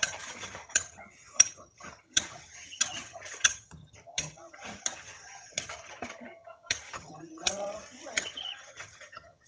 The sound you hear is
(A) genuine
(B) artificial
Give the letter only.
B